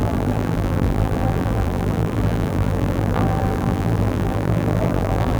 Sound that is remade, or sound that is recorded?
remade